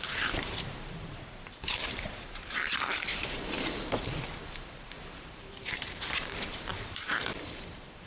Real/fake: fake